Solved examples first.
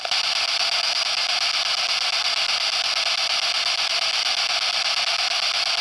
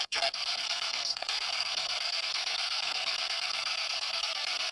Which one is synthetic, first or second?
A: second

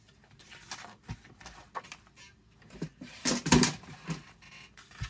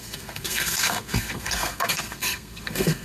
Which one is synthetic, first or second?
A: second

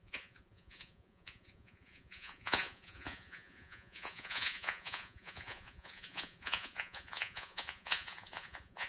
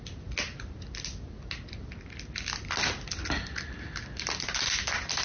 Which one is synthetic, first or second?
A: first